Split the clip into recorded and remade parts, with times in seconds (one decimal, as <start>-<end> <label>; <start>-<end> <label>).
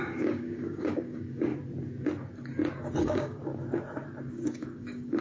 0.0-1.5 remade; 1.5-2.8 recorded; 2.8-3.5 remade; 3.5-4.3 recorded; 4.3-5.2 remade